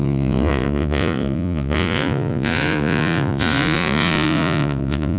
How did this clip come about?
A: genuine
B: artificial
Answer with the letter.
B